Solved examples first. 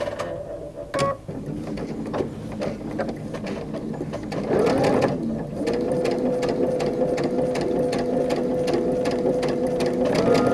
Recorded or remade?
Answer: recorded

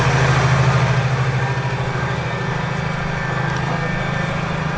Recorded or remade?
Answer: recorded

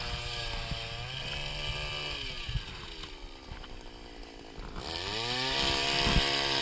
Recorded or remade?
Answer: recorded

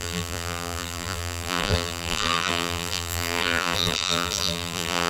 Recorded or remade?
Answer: remade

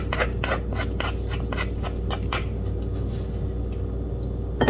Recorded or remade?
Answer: recorded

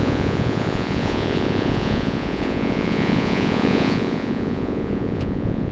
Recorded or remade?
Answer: remade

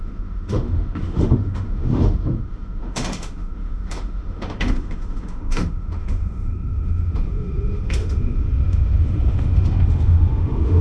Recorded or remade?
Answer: remade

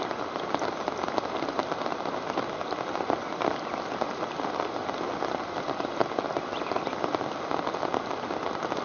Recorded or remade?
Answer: recorded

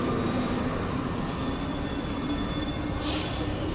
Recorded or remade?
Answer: recorded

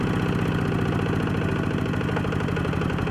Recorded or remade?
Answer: recorded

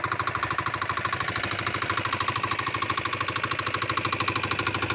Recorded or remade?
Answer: recorded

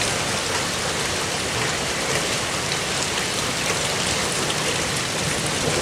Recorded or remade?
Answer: recorded